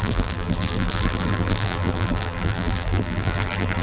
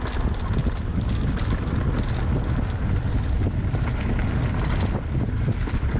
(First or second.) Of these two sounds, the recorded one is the second